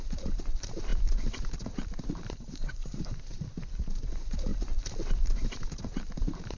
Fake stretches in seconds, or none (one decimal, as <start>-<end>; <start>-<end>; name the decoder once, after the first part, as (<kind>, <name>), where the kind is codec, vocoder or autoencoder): 0.0-2.8 (vocoder, BigVGAN v2); 3.8-4.5; 5.1-6.6